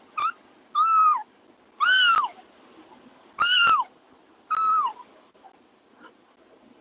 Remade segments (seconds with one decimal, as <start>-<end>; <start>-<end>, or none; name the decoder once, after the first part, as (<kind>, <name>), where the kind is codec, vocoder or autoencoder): none